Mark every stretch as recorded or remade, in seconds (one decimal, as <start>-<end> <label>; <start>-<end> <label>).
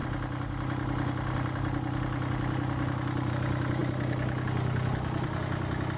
0.0-6.0 recorded